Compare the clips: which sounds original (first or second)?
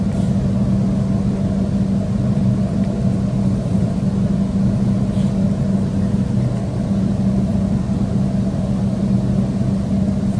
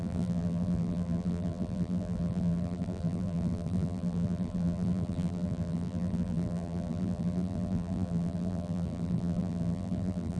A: first